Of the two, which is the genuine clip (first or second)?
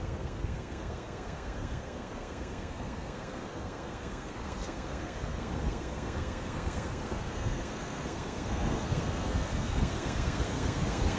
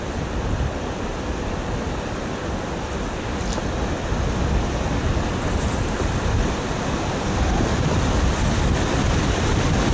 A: second